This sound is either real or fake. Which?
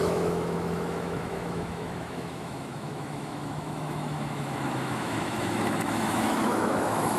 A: fake